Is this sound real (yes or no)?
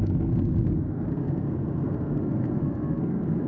no